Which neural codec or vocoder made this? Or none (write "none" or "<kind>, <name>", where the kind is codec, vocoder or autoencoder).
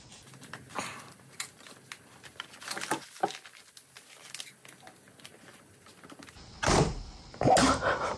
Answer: none